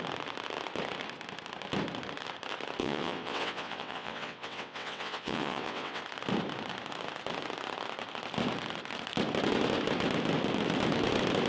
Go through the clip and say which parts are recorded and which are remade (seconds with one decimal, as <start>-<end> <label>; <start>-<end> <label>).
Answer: 0.0-2.8 recorded; 2.8-6.0 remade; 6.0-11.5 recorded